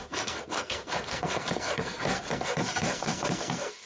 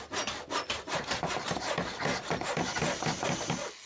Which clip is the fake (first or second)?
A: first